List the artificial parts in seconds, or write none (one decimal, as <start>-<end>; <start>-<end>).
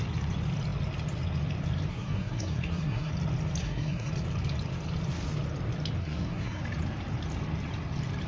1.9-3.1; 3.6-4.1; 6.0-6.6